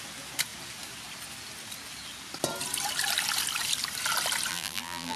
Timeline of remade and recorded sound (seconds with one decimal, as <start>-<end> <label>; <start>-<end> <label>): 0.0-4.5 recorded; 4.5-5.2 remade